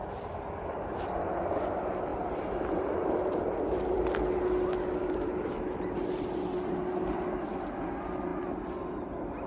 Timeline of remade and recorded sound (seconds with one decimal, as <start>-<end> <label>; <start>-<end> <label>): 0.0-2.1 recorded; 2.1-4.4 remade; 4.4-9.5 recorded